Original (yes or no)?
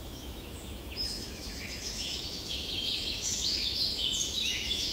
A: no